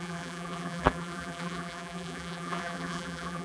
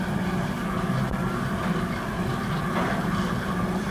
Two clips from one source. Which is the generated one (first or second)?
first